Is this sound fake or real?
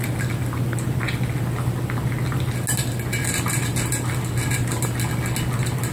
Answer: real